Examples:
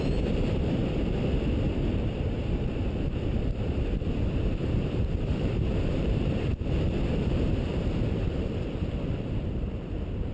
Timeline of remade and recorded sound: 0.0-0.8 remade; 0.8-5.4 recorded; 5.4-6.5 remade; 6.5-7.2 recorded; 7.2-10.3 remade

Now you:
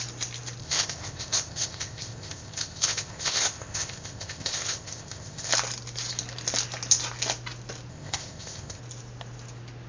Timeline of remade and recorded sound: 0.0-0.6 recorded; 0.6-5.5 remade; 5.5-7.9 recorded; 7.9-8.8 remade; 8.8-9.9 recorded

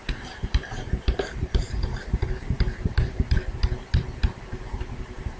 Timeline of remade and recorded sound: 0.0-3.2 remade; 3.2-5.4 recorded

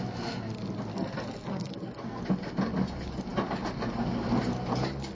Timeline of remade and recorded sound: 0.0-0.9 recorded; 0.9-2.2 remade; 2.2-5.1 recorded